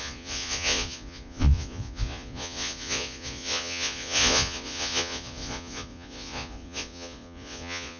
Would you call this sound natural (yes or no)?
no